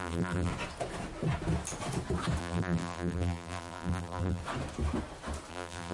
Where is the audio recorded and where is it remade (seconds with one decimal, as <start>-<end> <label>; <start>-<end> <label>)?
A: 0.0-0.5 remade; 0.5-2.4 recorded; 2.4-4.4 remade; 4.4-5.5 recorded; 5.5-5.9 remade